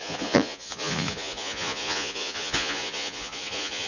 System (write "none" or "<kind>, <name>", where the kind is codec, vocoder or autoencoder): vocoder, Vocos